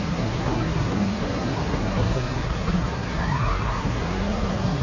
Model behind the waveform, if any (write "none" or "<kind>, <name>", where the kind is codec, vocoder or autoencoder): codec, SNAC